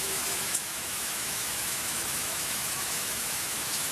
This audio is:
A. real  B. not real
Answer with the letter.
B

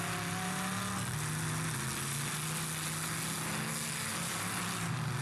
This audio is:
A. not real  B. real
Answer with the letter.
B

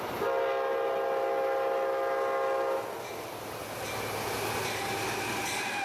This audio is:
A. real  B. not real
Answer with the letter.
A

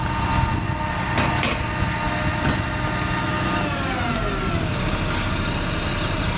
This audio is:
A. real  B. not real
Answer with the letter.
A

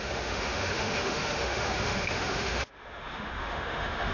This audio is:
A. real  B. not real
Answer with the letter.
B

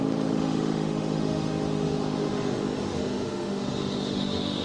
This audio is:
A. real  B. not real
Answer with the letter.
B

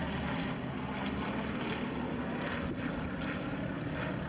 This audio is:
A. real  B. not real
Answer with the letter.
A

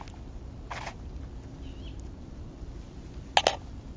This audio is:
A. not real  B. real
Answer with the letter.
B